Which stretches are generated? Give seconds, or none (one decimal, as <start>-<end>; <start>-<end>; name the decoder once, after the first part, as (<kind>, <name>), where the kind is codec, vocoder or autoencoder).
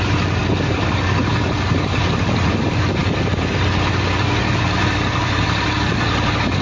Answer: none